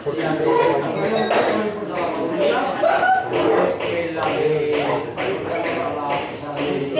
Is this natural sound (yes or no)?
yes